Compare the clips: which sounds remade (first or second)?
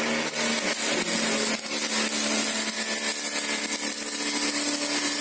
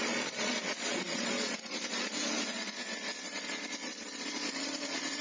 second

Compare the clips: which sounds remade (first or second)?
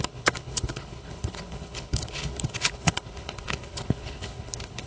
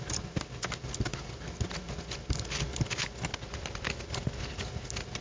first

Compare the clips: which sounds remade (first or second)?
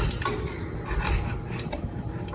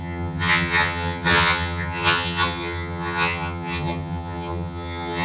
second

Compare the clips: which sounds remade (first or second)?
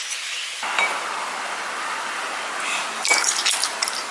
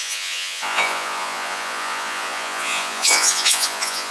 second